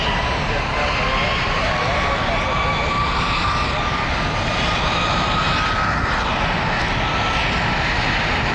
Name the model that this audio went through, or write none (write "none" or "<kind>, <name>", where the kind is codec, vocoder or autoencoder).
none